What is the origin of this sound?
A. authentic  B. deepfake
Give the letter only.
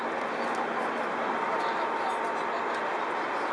A